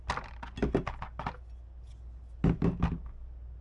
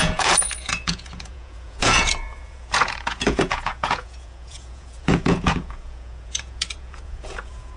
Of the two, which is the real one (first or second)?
first